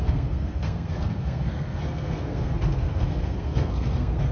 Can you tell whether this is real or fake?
fake